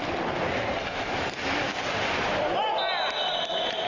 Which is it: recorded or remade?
recorded